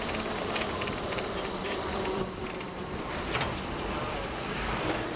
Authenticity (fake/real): fake